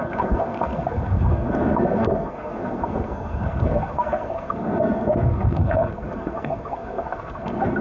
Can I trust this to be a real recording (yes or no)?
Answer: no